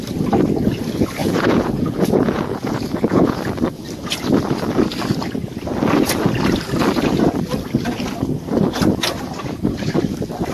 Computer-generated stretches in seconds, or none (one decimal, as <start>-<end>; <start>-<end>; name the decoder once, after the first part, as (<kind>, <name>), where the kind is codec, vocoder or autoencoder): 1.2-3.4 (vocoder, Vocos)

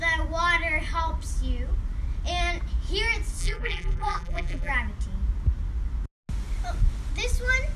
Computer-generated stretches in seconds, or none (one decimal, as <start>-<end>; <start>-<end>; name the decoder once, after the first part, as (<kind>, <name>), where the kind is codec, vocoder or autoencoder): 3.4-4.7 (vocoder, BigVGAN v2)

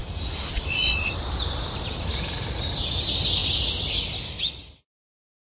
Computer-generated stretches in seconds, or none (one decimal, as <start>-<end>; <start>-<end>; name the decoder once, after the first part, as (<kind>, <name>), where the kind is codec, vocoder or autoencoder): 0.0-2.9 (vocoder, BigVGAN v2)